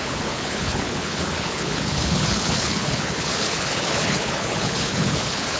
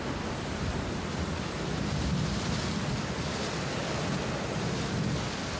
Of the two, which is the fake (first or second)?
first